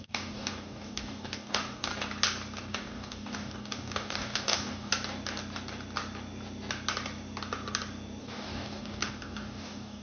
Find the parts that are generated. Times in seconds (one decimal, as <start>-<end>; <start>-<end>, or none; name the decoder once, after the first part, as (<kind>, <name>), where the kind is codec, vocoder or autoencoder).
0.0-1.9 (codec, DAC); 2.6-4.9; 8.2-10.0